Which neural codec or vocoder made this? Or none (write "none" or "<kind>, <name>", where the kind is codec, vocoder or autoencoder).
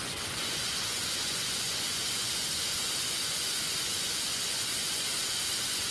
vocoder, Vocos